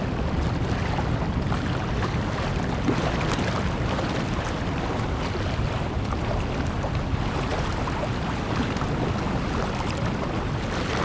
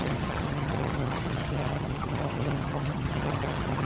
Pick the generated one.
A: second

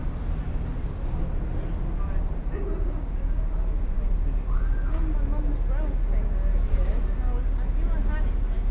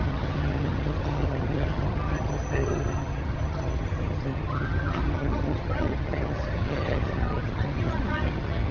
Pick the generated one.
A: second